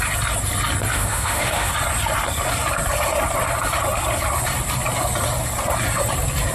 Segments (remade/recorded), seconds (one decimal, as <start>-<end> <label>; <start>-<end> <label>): 0.0-0.9 recorded; 0.9-1.7 remade; 1.7-6.5 recorded